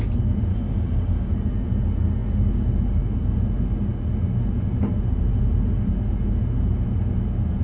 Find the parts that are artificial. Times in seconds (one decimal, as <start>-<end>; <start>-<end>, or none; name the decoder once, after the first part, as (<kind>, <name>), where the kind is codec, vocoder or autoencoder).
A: 0.5-1.3 (codec, DAC)